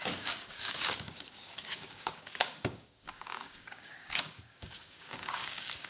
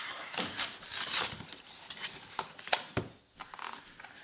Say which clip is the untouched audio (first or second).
second